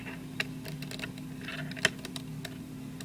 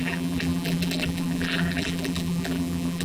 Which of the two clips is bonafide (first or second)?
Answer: first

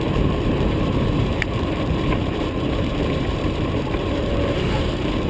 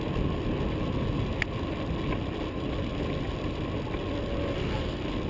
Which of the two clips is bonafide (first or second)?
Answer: second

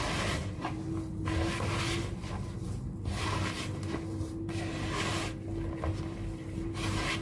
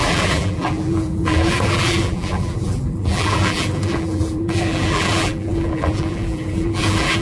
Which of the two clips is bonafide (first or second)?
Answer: first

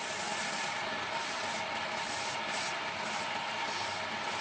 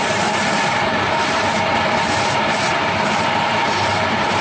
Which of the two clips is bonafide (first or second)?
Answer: first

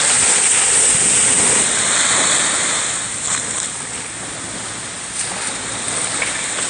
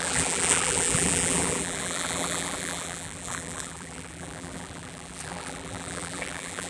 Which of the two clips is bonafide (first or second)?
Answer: first